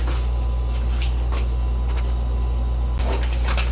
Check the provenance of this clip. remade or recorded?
recorded